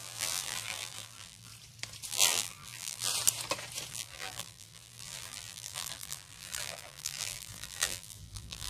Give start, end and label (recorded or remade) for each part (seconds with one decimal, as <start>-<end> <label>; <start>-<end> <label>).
0.0-1.5 remade; 1.5-2.1 recorded; 2.1-3.1 remade; 3.1-3.9 recorded; 3.9-8.7 remade